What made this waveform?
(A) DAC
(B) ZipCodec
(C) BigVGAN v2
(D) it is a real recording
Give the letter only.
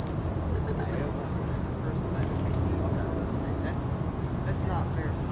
D